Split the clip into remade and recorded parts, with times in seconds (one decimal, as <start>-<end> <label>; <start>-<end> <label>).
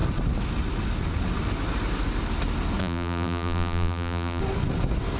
0.0-2.8 recorded; 2.8-4.4 remade; 4.4-5.2 recorded